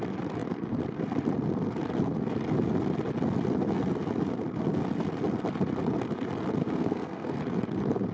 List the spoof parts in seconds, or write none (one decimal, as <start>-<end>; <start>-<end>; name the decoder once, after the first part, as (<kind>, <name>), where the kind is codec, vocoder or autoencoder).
6.6-7.4 (codec, SNAC)